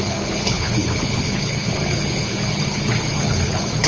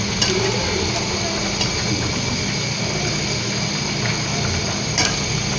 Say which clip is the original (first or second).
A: second